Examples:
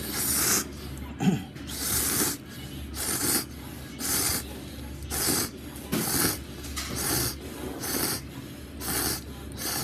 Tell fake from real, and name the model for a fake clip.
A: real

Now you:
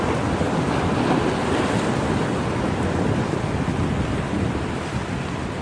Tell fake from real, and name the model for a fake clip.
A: real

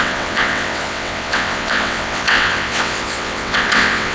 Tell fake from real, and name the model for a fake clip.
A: fake, vocoder, WaveNeXt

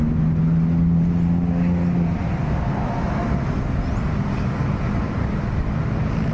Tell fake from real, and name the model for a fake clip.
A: real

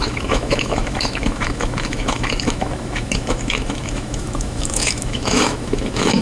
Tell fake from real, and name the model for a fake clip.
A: fake, autoencoder, DAC-VAE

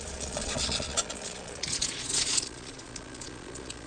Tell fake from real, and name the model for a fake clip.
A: fake, vocoder, Vocos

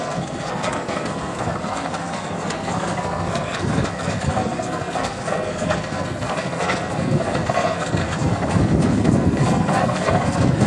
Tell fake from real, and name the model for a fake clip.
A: fake, codec, SNAC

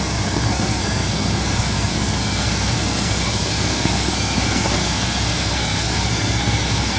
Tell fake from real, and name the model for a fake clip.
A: fake, codec, SNAC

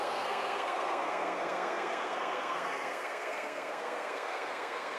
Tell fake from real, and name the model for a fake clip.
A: fake, codec, SNAC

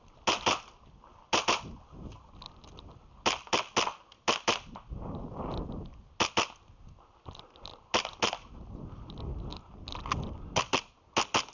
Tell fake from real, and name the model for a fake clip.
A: real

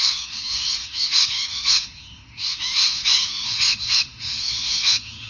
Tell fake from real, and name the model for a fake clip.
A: fake, autoencoder, DAC-VAE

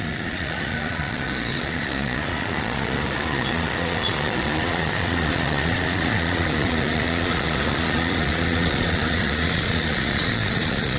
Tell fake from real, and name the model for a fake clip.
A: fake, vocoder, Vocos